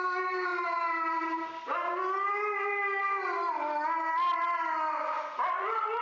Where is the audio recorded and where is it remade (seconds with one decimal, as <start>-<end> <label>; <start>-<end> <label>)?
0.0-6.0 recorded